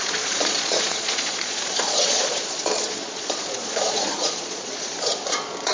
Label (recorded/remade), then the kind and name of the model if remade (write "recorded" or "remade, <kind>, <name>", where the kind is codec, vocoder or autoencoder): remade, vocoder, Vocos